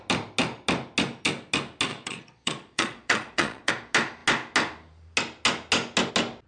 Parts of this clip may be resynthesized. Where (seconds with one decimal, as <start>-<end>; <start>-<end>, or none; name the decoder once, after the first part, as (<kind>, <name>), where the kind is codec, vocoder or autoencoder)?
1.9-3.7 (vocoder, Vocos)